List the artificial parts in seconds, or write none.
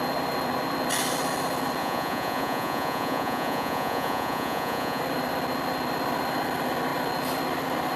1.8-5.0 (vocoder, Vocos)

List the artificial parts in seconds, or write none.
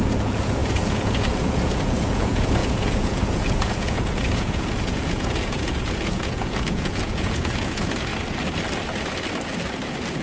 0.0-8.1 (vocoder, Vocos)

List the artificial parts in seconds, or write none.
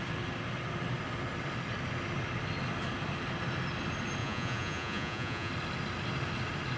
4.2-5.5 (vocoder, Vocos)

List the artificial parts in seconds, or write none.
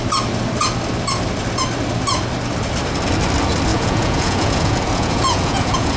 3.7-6.0 (vocoder, Vocos)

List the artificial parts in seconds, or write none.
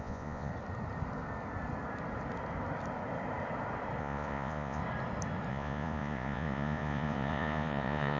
0.0-0.5 (vocoder, Vocos); 4.0-4.8; 5.5-8.2